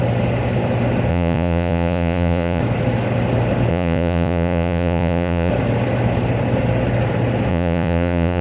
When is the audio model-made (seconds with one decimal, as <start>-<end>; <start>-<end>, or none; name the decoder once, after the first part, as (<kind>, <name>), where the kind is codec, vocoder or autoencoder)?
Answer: 1.1-2.6 (vocoder, Vocos); 3.7-5.5; 7.5-8.4